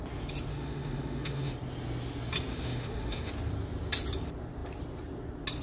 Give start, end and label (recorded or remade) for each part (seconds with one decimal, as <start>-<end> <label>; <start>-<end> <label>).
0.0-0.5 recorded; 0.5-1.5 remade; 1.5-2.5 recorded; 2.5-3.3 remade; 3.3-5.6 recorded